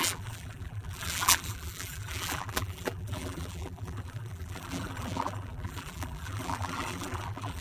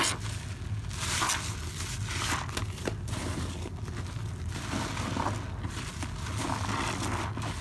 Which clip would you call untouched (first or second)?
second